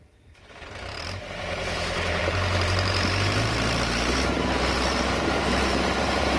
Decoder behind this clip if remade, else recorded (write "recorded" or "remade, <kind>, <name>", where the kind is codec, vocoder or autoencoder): remade, vocoder, BigVGAN v2